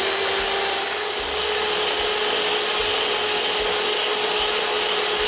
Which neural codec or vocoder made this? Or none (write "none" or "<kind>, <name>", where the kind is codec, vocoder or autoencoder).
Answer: none